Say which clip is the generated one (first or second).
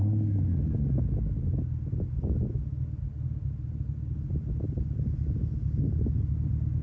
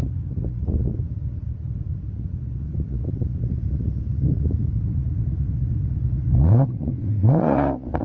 second